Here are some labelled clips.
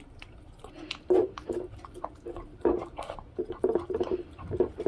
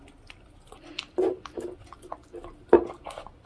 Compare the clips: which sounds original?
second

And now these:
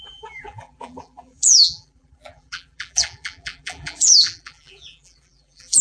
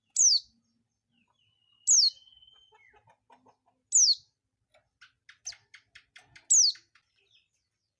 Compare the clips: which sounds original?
second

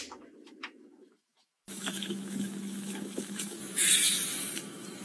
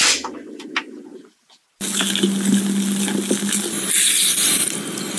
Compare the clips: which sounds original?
second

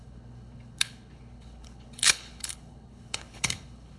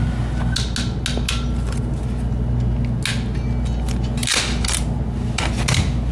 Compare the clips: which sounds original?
second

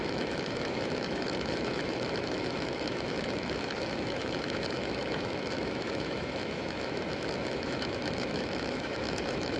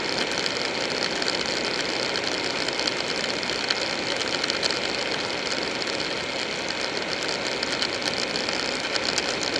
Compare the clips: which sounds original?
second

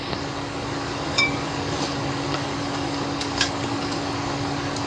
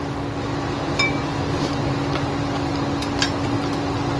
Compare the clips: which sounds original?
second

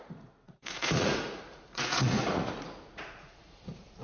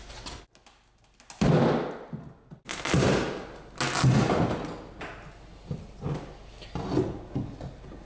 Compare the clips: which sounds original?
second